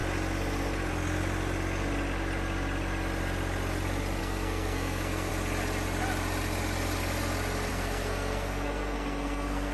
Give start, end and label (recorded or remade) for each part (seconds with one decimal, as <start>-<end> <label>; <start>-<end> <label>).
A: 0.0-4.2 recorded; 4.2-5.3 remade; 5.3-7.7 recorded; 7.7-9.7 remade